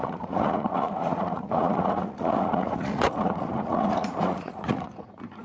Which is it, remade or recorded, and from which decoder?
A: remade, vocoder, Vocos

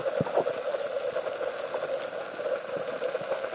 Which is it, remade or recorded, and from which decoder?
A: recorded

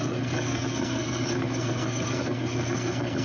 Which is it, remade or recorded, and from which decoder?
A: remade, codec, SNAC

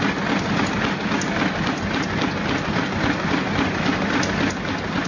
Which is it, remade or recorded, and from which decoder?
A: recorded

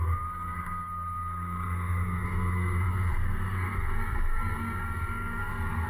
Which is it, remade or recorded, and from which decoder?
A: remade, codec, SNAC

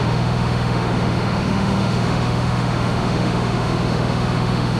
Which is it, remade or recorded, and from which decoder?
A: remade, autoencoder, DAC-VAE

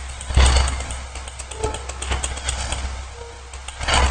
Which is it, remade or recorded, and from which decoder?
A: recorded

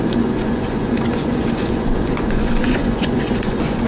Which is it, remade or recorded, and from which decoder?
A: remade, vocoder, Vocos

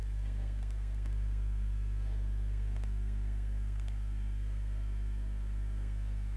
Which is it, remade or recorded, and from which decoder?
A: remade, codec, SNAC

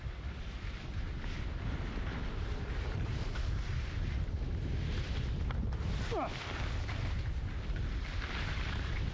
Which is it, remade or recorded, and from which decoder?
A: recorded